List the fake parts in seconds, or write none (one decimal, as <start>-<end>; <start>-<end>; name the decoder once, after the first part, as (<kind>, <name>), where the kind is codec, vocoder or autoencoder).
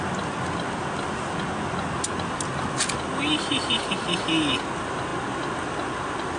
none